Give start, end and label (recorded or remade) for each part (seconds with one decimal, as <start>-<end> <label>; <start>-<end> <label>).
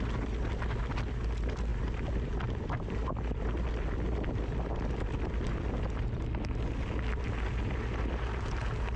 0.0-9.0 recorded